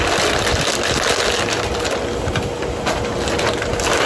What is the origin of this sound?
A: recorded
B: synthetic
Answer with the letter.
A